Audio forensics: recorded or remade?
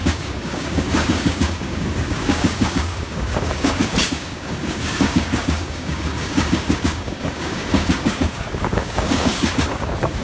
remade